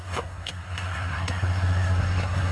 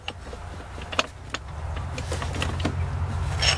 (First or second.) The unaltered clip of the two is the second